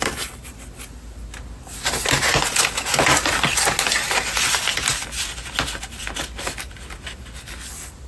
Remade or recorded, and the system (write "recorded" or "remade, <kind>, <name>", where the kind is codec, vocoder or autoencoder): recorded